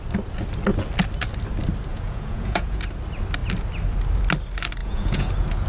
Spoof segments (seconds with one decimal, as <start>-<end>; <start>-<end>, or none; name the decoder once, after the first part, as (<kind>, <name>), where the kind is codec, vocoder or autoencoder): 1.9-2.8 (vocoder, Vocos); 4.8-5.3